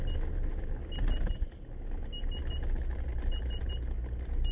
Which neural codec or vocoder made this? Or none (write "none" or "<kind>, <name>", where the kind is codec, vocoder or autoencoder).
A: none